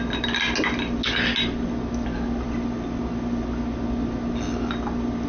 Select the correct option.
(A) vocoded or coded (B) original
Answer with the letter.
B